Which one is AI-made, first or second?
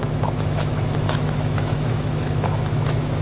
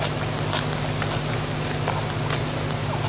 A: first